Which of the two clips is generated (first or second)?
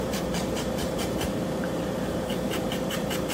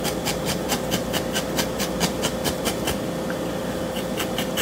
first